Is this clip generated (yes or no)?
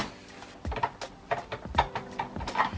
no